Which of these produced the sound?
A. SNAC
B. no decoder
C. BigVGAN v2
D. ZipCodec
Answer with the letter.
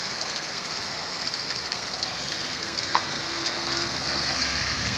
A